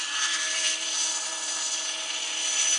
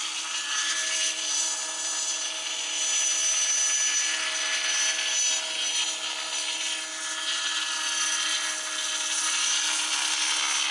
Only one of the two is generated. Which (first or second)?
first